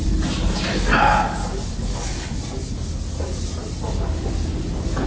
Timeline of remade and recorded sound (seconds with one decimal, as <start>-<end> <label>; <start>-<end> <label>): 0.0-0.7 recorded; 0.7-2.4 remade; 2.4-5.1 recorded